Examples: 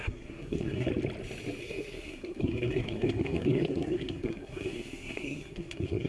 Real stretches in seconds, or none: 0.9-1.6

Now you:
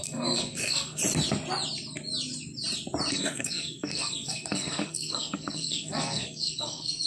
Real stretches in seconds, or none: 1.0-3.1

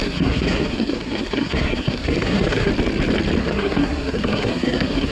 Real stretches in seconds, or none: 2.7-3.4